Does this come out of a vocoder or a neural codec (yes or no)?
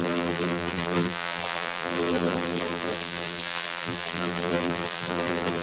yes